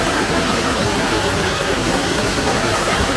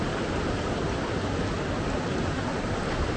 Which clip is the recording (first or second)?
second